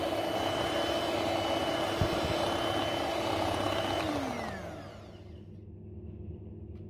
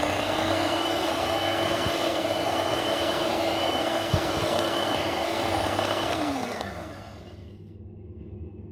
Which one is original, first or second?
first